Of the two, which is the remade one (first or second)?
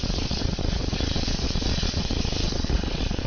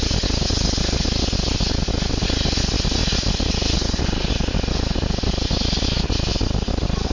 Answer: first